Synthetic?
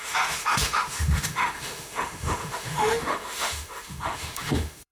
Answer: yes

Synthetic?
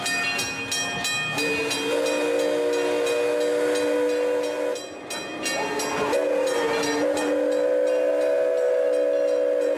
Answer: no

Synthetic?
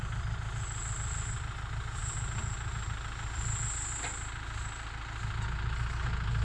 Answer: no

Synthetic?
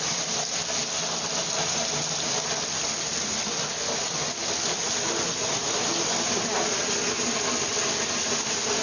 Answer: no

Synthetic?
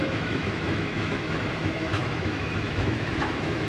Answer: yes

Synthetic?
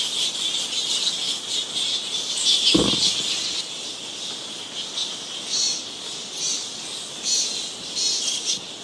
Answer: no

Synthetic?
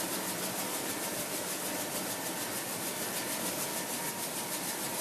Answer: no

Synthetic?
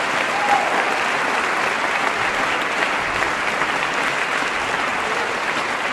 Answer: no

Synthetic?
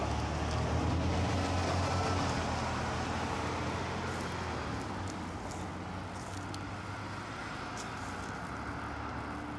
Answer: no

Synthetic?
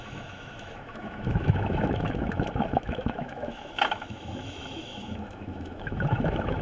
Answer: yes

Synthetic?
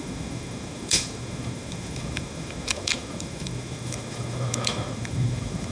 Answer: yes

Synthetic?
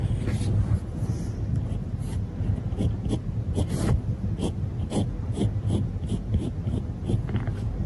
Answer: no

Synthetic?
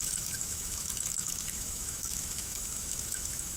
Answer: yes